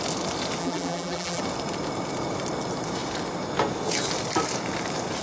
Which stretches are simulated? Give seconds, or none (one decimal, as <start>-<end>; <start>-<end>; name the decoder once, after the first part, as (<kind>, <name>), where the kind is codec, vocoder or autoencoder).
0.6-1.4 (vocoder, BigVGAN v2)